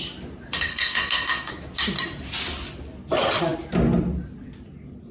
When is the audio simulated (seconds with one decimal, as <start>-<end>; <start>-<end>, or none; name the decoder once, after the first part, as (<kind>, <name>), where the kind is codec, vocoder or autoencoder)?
0.7-1.5 (codec, SNAC)